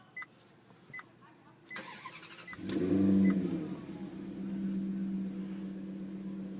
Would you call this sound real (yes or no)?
yes